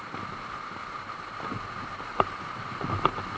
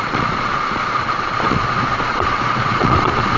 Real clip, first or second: first